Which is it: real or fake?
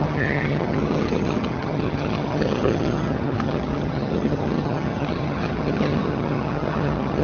fake